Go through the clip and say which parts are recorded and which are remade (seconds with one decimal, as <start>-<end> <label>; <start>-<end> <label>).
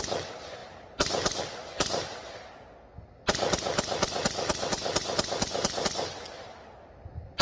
0.0-7.4 recorded